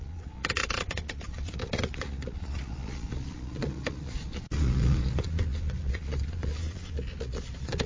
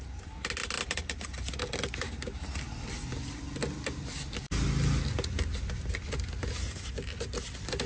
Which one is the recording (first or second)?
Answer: second